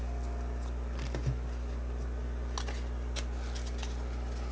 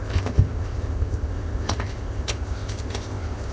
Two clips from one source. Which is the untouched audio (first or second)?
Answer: first